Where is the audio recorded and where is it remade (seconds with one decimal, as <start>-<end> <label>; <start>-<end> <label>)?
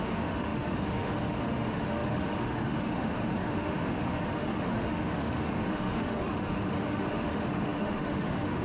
0.0-8.6 remade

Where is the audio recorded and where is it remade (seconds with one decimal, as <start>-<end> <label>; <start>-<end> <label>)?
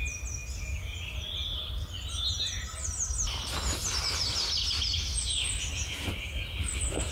0.0-7.1 recorded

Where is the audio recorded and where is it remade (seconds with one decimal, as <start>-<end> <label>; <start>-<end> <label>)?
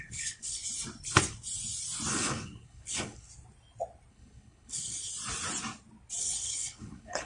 0.0-0.6 remade; 0.6-2.1 recorded; 2.1-3.3 remade; 3.3-4.1 recorded; 4.1-5.1 remade; 5.1-6.2 recorded; 6.2-7.3 remade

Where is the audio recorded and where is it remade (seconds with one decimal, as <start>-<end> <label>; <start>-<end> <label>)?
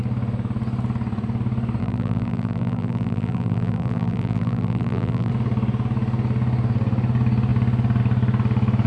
0.0-1.8 recorded; 1.8-5.3 remade; 5.3-8.9 recorded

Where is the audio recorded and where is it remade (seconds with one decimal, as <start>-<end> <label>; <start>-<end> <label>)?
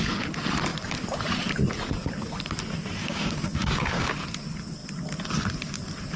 0.0-3.0 recorded; 3.0-4.1 remade; 4.1-6.2 recorded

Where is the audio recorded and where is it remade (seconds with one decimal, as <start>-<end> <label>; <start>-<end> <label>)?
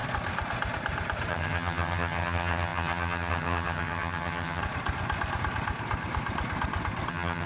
0.0-1.3 recorded; 1.3-4.6 remade; 4.6-7.1 recorded; 7.1-7.5 remade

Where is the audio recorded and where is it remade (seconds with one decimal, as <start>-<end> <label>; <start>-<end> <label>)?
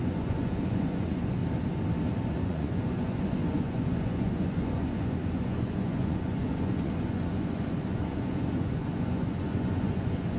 0.0-1.4 remade; 1.4-2.4 recorded; 2.4-10.4 remade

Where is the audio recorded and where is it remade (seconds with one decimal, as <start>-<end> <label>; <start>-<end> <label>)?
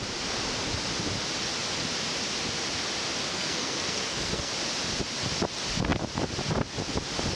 0.0-3.3 recorded; 3.3-4.5 remade; 4.5-7.4 recorded